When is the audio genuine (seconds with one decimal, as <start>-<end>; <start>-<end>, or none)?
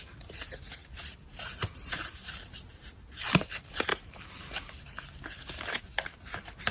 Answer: 3.9-5.8